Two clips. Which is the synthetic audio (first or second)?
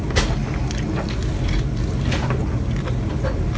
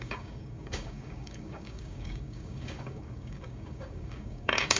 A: second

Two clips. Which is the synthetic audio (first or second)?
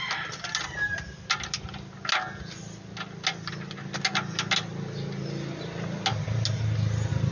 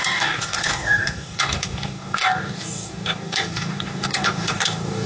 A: second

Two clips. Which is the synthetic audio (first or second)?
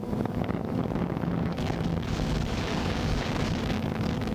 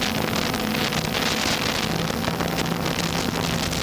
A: first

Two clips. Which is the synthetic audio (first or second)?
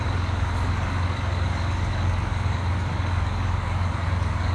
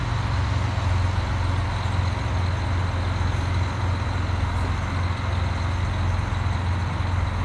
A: first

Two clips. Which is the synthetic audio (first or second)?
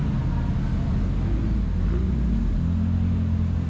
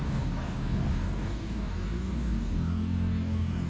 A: second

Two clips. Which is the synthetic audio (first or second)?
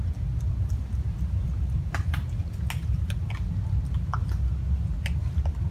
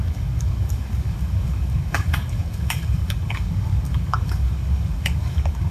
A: second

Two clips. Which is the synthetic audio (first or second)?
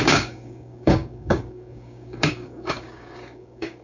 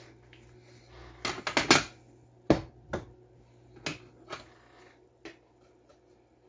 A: first